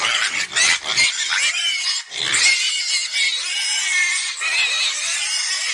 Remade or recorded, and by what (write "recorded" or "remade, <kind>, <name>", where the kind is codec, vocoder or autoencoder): recorded